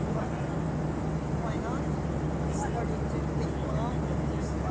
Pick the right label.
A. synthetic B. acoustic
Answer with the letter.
B